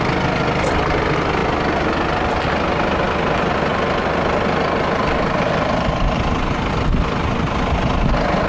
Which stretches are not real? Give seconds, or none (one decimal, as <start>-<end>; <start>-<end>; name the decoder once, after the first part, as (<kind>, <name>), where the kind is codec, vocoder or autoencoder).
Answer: none

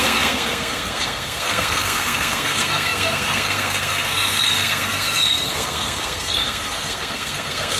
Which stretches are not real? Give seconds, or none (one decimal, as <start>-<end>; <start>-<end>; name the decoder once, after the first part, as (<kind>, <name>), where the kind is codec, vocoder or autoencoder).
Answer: 0.0-7.8 (codec, SNAC)

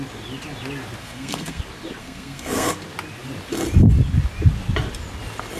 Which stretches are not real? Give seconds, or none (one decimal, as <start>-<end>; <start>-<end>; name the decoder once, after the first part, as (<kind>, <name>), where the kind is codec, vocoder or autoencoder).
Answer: 1.0-1.6 (codec, SNAC); 2.0-2.7

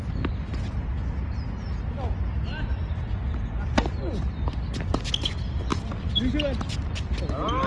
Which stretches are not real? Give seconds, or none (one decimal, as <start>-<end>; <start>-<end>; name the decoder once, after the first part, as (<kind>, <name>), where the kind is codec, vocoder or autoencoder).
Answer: none

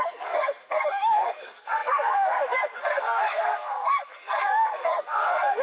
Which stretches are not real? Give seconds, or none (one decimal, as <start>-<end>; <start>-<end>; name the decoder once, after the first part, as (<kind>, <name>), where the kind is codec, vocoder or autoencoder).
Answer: 0.0-5.6 (codec, SNAC)

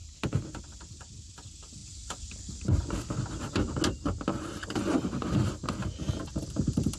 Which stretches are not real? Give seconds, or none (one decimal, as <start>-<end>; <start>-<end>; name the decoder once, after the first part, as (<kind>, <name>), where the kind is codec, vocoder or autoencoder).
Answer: none